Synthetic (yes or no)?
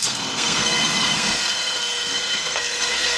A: yes